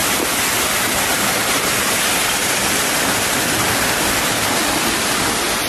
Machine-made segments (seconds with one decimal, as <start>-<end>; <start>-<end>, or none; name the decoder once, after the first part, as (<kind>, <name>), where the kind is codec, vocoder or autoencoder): 4.6-5.1 (vocoder, BigVGAN v2)